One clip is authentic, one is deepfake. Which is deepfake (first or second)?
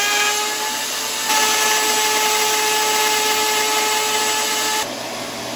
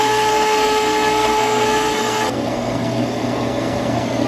second